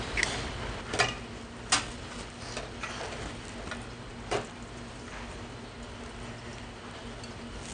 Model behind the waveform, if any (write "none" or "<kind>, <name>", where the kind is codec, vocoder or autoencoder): none